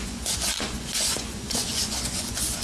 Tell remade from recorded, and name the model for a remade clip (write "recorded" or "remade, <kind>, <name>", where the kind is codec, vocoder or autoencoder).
remade, vocoder, Vocos